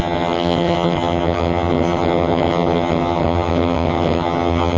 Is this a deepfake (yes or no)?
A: yes